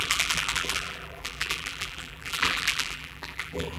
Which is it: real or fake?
fake